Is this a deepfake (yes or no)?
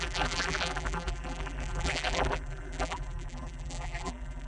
yes